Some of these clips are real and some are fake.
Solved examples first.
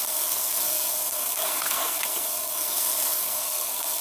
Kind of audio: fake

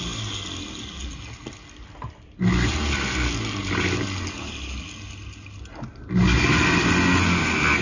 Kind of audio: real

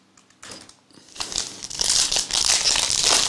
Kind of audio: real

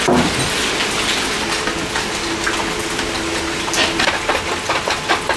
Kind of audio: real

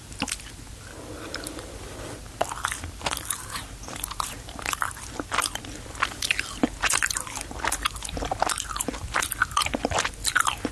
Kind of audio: real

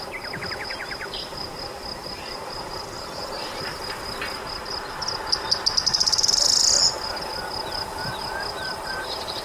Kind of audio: real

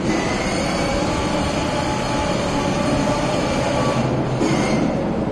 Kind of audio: real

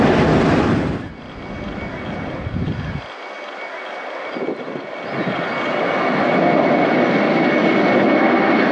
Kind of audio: real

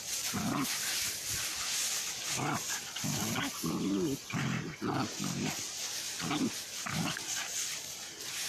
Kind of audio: real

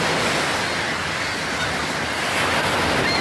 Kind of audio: real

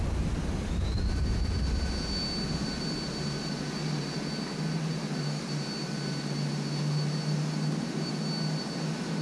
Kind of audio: real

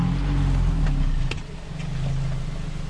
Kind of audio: real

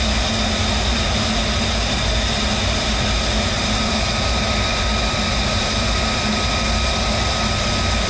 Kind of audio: real